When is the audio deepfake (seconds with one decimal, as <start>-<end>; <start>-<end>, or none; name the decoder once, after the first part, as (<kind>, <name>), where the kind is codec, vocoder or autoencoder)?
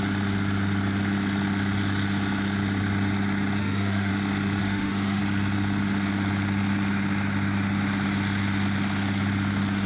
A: 3.6-4.1 (autoencoder, DAC-VAE); 4.6-5.2